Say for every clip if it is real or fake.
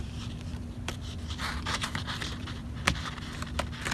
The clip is fake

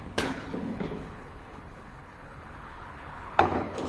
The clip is fake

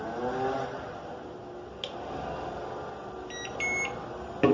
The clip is real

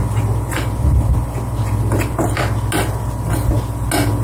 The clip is real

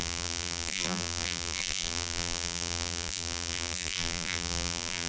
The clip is fake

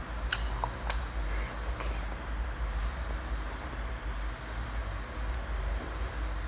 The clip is real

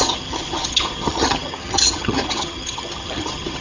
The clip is fake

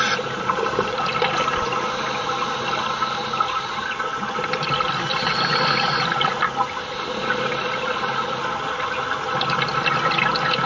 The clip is real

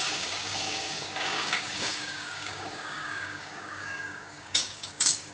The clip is fake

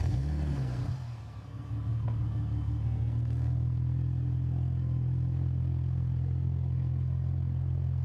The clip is fake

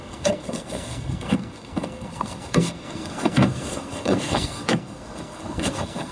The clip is fake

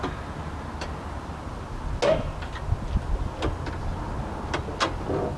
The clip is real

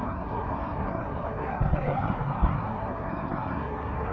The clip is fake